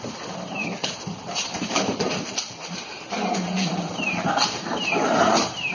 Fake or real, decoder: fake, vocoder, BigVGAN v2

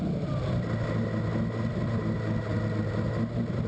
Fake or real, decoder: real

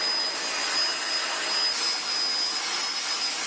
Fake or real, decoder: real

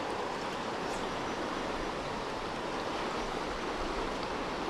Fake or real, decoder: real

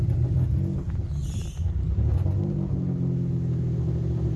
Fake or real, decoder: real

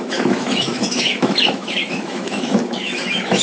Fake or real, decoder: fake, autoencoder, DAC-VAE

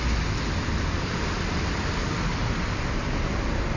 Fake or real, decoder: real